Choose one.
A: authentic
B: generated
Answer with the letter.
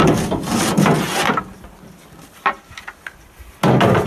A